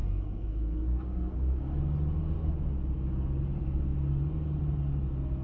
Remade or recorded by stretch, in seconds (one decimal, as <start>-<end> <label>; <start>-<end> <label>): 0.0-1.6 remade; 1.6-5.4 recorded